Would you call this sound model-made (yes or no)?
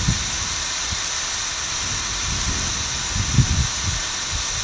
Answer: no